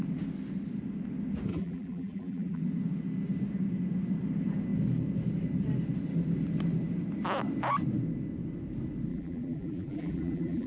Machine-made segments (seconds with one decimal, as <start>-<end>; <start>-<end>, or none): 1.5-2.6; 9.1-10.7